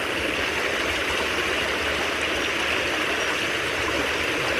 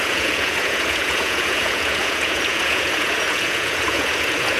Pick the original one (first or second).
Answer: first